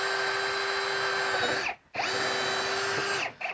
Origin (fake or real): real